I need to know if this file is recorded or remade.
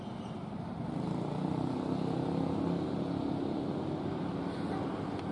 recorded